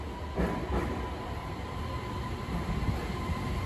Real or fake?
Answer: real